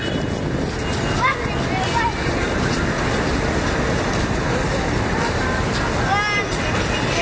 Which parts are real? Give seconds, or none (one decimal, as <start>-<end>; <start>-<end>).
0.0-7.2